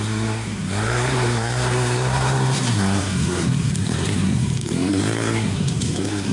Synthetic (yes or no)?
yes